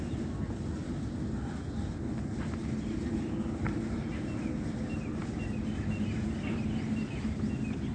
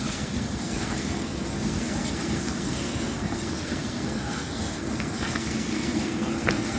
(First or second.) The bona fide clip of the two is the first